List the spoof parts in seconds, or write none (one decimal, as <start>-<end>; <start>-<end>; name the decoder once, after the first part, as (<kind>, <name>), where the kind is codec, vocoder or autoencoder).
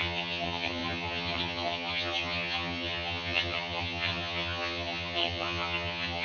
0.0-6.2 (vocoder, HiFi-GAN)